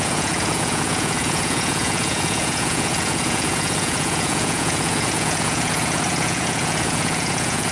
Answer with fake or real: fake